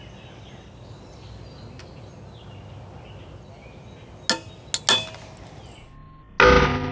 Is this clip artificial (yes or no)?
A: no